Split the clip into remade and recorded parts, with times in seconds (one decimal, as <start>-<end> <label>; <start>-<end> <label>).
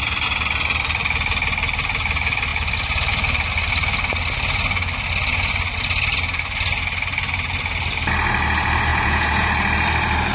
0.0-8.9 recorded; 8.9-9.5 remade; 9.5-10.3 recorded